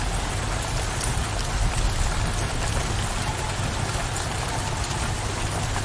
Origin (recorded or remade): recorded